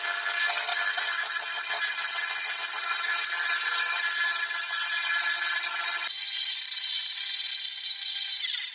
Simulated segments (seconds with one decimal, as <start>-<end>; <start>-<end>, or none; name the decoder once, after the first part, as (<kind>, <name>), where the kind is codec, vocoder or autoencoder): none

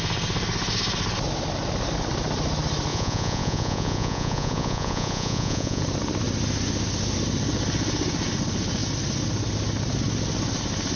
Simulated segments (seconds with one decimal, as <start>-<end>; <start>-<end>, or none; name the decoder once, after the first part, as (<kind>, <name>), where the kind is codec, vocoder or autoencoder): 2.9-5.8 (vocoder, Vocos)

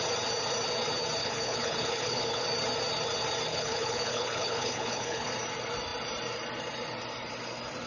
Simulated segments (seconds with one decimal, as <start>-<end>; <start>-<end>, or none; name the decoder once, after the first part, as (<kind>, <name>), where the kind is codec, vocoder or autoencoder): 1.2-2.4 (codec, HILCodec); 3.5-5.3

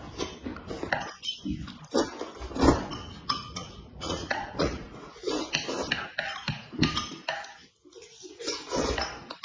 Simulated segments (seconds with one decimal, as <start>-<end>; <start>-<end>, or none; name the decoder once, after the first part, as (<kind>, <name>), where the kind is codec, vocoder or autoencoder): 3.0-5.3 (vocoder, Vocos)